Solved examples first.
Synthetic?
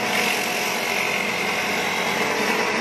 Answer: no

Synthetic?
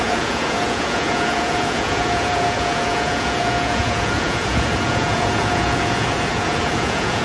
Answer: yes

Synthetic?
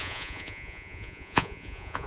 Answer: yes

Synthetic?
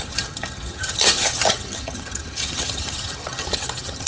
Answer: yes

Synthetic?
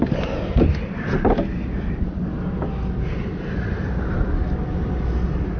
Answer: no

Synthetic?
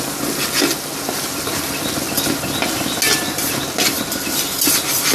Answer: no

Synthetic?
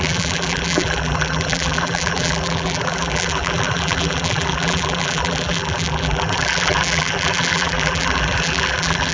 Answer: yes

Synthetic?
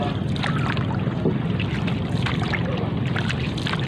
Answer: no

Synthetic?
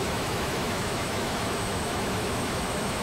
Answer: yes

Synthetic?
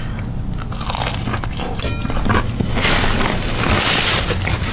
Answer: no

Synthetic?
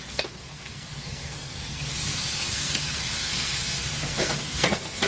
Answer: yes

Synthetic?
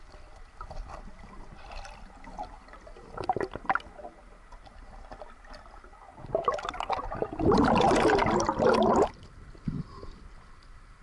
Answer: no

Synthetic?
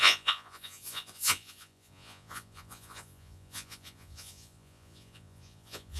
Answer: yes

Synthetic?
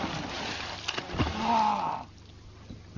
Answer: no